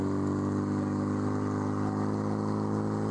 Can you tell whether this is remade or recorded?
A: recorded